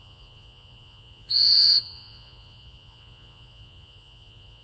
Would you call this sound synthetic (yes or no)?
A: yes